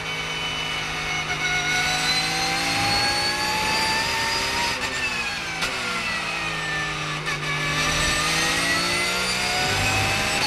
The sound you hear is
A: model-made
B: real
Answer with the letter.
B